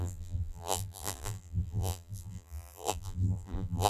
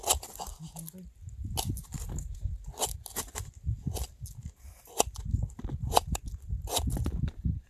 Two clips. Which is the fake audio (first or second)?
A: first